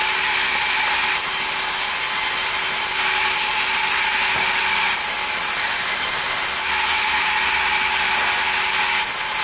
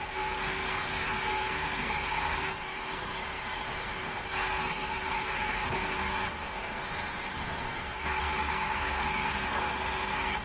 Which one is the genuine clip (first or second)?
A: first